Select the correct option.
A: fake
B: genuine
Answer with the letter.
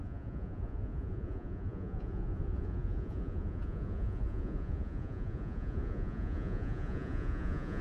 A